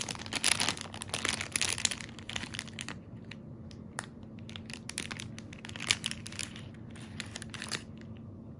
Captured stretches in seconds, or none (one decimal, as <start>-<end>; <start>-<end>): 0.0-8.6